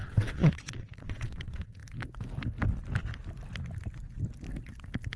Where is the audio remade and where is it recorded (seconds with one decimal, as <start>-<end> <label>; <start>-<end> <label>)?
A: 0.0-1.8 remade; 1.8-5.2 recorded